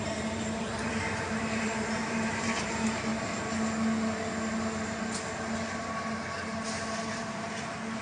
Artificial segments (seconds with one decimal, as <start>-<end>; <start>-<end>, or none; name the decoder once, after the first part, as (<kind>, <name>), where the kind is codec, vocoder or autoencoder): 0.0-3.1 (vocoder, BigVGAN v2); 6.7-8.0